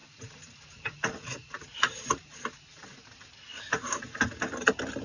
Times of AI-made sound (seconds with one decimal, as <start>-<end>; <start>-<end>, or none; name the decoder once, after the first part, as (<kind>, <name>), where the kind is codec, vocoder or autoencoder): 0.0-3.0 (vocoder, BigVGAN v2); 3.7-4.2